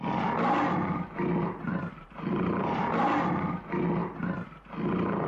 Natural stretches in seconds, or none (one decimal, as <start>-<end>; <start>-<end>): 0.0-1.7; 3.0-5.3